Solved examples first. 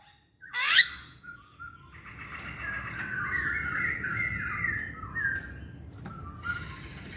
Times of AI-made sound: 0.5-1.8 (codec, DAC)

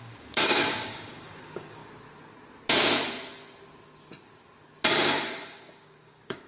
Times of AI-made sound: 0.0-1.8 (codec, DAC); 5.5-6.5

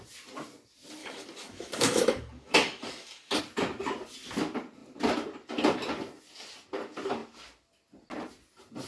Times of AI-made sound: 1.0-3.4 (codec, DAC)